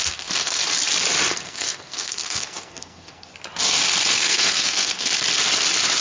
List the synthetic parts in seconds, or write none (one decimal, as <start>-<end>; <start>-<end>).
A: 0.0-0.6; 1.3-3.3; 4.2-5.1